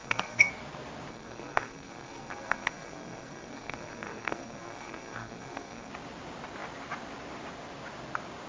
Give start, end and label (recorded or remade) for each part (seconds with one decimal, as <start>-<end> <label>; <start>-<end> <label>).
0.0-0.5 remade; 0.5-1.1 recorded; 1.1-5.9 remade; 5.9-8.5 recorded